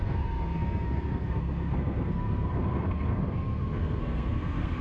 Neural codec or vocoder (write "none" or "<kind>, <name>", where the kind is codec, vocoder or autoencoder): codec, SNAC